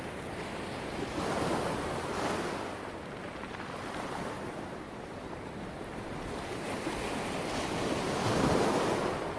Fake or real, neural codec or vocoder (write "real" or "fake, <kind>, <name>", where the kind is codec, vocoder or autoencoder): real